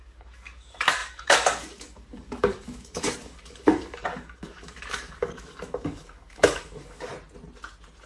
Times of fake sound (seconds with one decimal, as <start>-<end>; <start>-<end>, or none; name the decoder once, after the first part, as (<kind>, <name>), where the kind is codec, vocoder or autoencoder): 0.0-7.1 (codec, DAC)